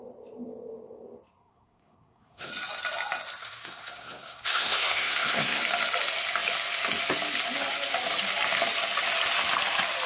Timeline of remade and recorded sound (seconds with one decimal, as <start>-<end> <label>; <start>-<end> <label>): 0.0-1.4 recorded; 1.4-2.5 remade; 2.5-3.4 recorded; 3.4-5.6 remade; 5.6-10.1 recorded